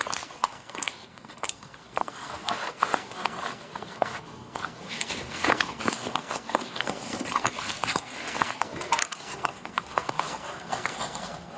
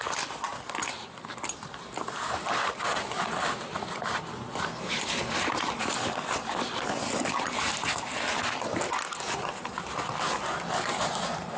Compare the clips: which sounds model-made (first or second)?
first